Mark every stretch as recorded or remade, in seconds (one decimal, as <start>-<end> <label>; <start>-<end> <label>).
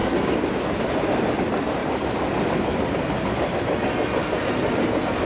0.0-5.2 recorded